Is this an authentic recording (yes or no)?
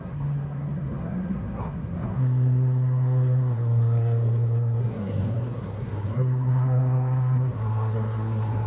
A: no